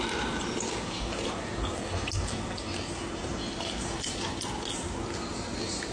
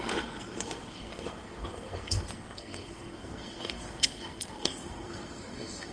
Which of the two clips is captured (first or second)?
first